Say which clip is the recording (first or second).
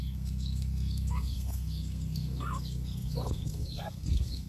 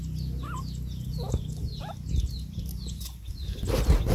second